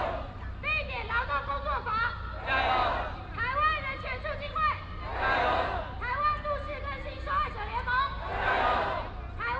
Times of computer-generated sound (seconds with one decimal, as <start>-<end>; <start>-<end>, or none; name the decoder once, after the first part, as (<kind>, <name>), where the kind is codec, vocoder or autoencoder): none